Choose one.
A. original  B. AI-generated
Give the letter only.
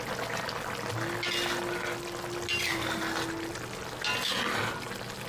A